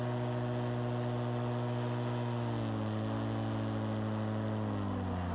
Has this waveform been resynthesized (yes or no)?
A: no